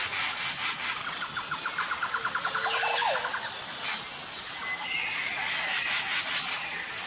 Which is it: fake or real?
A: real